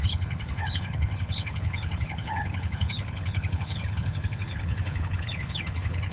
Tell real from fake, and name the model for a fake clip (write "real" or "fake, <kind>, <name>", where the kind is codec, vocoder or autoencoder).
fake, codec, HILCodec